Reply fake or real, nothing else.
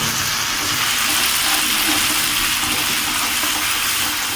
real